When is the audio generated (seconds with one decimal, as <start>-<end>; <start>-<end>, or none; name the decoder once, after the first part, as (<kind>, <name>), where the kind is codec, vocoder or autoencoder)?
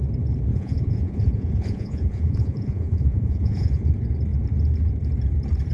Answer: 0.5-3.9 (vocoder, Vocos)